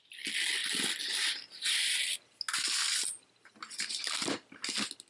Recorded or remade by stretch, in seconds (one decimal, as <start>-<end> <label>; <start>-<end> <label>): 0.0-5.1 recorded

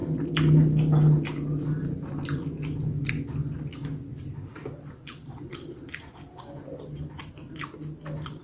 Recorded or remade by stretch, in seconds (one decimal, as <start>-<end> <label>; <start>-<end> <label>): 0.0-4.5 recorded; 4.5-8.4 remade

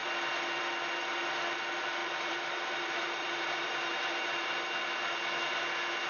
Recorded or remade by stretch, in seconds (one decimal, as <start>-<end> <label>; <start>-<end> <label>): 0.0-2.0 recorded; 2.0-4.5 remade; 4.5-6.1 recorded